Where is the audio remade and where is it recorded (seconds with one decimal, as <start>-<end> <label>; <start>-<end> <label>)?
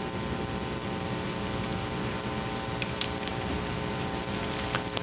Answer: 0.0-5.0 recorded